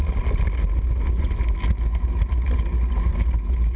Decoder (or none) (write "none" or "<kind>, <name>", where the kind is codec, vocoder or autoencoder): none